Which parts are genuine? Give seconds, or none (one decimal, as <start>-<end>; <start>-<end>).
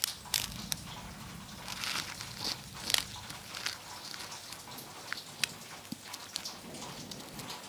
0.0-7.7